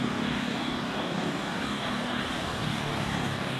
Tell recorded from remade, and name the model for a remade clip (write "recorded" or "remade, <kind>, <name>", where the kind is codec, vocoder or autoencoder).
remade, codec, DAC